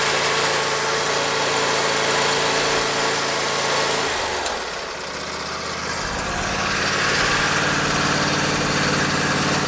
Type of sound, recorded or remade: recorded